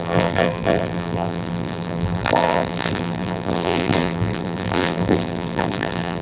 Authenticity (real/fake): fake